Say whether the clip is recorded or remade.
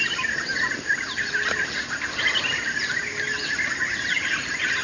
recorded